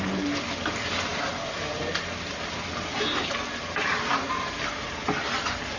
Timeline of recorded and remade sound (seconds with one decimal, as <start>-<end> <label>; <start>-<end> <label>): 0.0-5.8 recorded